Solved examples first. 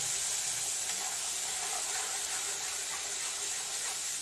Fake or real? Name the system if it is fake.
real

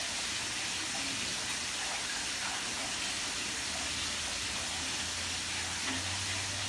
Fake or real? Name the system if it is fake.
real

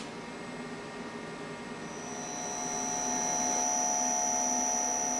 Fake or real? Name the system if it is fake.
real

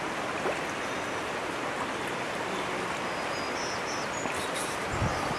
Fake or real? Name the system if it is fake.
real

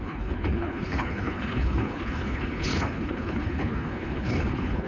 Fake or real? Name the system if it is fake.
fake, codec, HILCodec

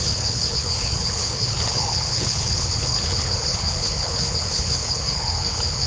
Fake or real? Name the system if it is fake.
fake, codec, HILCodec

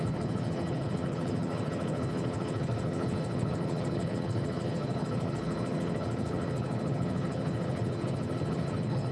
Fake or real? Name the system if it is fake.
fake, codec, HILCodec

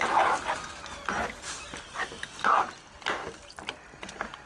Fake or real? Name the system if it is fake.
real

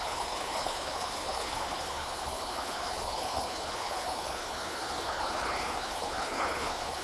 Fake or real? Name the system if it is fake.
fake, codec, HILCodec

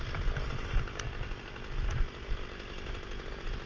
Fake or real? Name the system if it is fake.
real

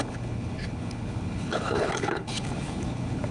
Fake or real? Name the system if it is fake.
fake, codec, HILCodec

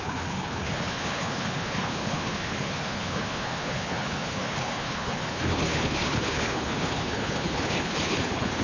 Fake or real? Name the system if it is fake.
fake, codec, HILCodec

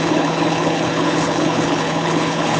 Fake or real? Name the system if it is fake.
fake, codec, HILCodec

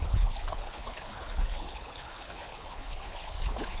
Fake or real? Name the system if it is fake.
fake, codec, HILCodec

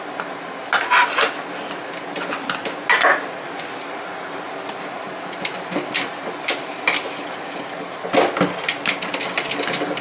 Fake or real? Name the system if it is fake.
real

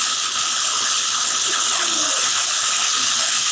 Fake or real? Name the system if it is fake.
fake, codec, HILCodec